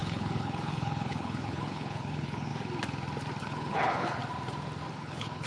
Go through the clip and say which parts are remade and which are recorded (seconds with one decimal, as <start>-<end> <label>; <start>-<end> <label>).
0.0-2.5 remade; 2.5-3.4 recorded; 3.4-4.2 remade; 4.2-4.9 recorded; 4.9-5.5 remade